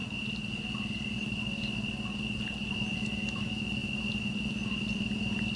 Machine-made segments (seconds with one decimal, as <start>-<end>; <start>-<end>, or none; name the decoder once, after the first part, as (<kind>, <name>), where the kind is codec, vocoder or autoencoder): none